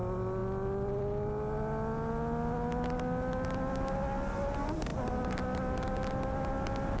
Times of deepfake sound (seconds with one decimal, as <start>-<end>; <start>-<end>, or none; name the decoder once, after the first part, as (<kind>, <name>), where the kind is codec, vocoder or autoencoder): none